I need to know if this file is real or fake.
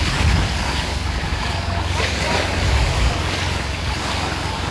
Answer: fake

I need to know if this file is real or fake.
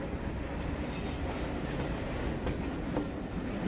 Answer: real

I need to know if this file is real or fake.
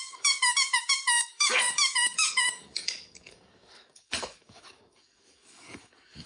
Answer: fake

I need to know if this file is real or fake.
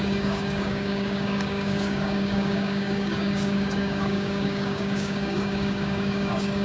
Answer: fake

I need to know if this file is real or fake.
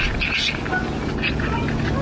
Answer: real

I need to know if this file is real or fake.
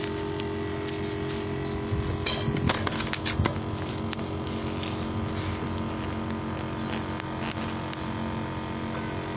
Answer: real